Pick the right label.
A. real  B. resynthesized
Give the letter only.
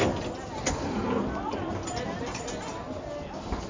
A